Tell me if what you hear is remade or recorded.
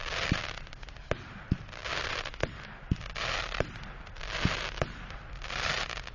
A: recorded